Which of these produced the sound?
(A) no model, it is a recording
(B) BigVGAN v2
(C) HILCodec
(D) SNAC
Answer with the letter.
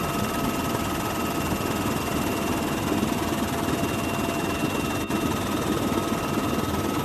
A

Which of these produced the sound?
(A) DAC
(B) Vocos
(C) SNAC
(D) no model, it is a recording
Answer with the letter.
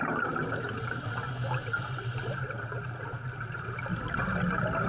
D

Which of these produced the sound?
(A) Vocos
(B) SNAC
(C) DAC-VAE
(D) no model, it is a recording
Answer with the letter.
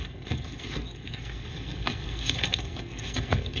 B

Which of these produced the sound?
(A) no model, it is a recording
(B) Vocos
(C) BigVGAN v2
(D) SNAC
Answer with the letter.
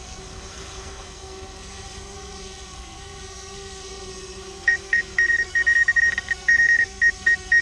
D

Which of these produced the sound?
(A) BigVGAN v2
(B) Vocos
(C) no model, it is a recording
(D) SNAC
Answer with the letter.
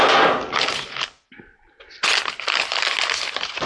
C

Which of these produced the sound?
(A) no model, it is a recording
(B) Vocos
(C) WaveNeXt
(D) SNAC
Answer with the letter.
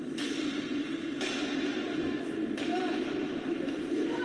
A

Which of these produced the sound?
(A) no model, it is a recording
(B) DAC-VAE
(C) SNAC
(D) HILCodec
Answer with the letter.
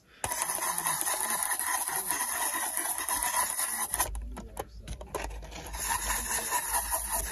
A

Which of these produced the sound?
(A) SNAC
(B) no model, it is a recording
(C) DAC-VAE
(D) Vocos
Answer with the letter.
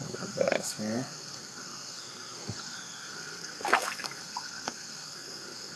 A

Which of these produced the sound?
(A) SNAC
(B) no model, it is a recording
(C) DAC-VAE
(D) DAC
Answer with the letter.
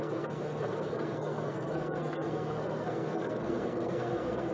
A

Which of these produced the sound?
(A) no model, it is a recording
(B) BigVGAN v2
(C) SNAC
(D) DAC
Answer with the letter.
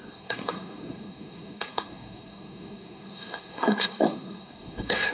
C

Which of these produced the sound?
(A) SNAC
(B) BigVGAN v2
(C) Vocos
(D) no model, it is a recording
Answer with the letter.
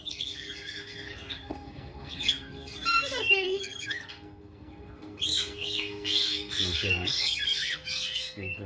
A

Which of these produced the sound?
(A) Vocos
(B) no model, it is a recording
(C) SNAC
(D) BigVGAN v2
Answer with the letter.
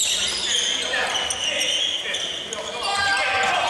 B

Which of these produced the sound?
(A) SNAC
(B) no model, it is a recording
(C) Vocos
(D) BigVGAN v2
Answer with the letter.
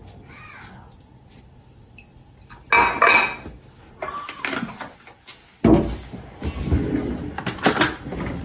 B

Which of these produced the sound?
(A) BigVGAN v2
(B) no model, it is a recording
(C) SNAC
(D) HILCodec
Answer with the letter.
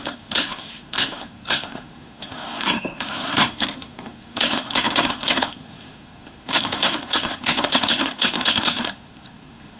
C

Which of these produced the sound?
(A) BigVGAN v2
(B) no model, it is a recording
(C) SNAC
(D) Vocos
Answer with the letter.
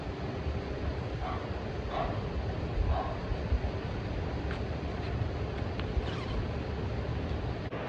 B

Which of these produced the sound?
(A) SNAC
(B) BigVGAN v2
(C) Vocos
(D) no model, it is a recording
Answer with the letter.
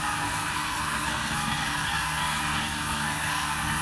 A